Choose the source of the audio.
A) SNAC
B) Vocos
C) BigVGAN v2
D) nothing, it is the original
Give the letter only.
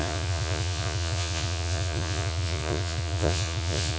B